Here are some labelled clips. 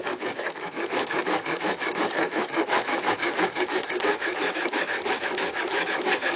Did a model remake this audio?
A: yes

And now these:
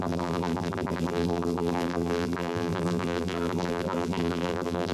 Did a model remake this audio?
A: yes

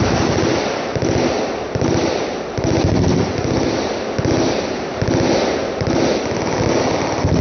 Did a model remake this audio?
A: no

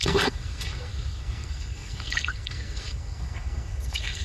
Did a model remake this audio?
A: yes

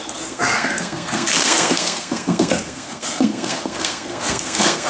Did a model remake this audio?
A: yes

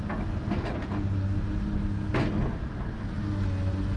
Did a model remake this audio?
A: no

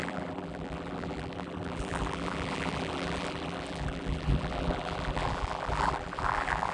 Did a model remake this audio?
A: yes